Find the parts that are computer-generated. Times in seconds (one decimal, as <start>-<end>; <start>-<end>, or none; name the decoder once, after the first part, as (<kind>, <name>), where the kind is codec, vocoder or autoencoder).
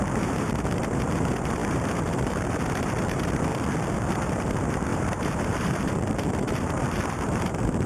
0.0-3.5 (vocoder, BigVGAN v2); 4.2-7.9